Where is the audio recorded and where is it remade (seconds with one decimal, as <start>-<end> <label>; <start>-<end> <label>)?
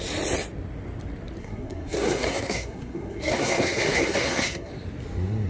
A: 0.0-1.4 recorded; 1.4-4.7 remade; 4.7-5.5 recorded